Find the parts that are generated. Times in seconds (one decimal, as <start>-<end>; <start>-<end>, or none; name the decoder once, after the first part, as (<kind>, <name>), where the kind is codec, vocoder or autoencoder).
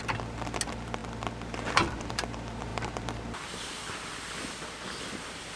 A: none